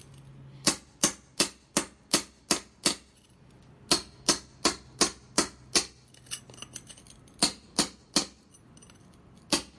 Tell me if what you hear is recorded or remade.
recorded